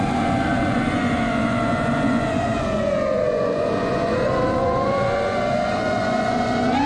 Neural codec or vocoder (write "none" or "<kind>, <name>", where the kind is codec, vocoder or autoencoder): vocoder, Vocos